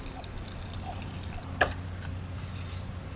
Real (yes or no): yes